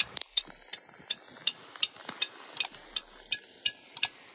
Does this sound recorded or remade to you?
recorded